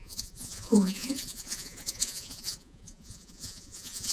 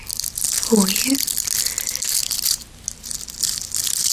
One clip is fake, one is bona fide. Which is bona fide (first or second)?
second